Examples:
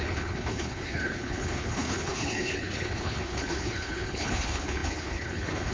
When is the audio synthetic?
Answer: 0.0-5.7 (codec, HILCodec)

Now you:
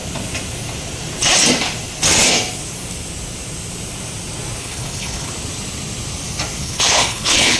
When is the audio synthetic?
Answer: 4.6-5.3 (codec, HILCodec); 6.6-7.6

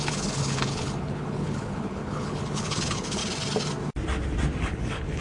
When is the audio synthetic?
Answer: 0.0-3.2 (codec, HILCodec); 4.6-5.2

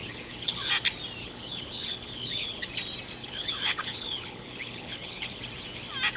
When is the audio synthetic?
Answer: 0.0-0.7 (codec, HILCodec); 1.2-2.7; 3.2-5.4

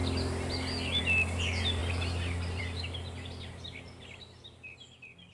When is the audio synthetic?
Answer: none

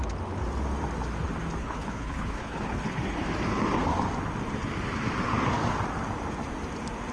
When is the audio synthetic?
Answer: 1.6-3.2 (codec, HILCodec)

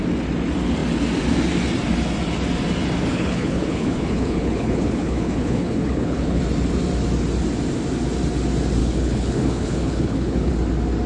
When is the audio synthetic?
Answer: 3.1-6.4 (codec, HILCodec); 8.8-10.5